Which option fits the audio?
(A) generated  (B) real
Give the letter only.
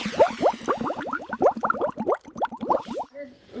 B